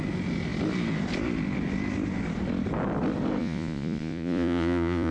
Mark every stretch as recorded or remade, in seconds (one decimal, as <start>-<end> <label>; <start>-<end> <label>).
0.0-3.4 recorded; 3.4-5.1 remade